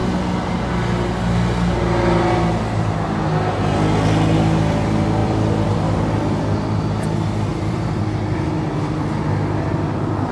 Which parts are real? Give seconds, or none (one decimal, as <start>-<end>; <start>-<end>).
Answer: 0.0-5.2; 6.0-7.5; 8.0-10.3